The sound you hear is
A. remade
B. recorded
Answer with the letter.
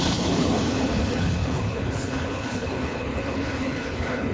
A